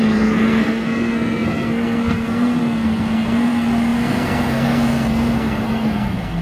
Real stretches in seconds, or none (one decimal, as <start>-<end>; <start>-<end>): none